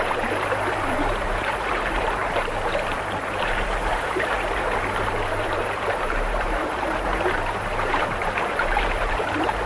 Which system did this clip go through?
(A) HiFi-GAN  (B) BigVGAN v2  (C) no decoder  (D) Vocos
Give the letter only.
B